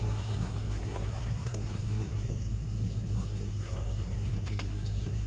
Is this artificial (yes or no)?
yes